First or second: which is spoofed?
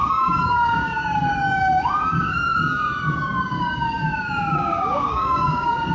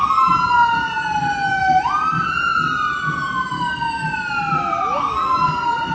first